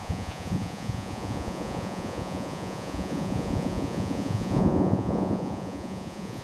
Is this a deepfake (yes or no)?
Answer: yes